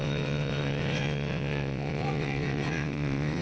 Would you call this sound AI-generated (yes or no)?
yes